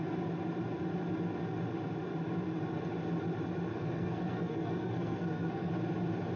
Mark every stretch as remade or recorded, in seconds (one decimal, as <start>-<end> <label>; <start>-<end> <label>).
0.0-3.7 recorded; 3.7-5.7 remade; 5.7-6.4 recorded